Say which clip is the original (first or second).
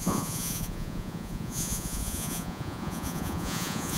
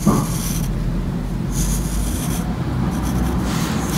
second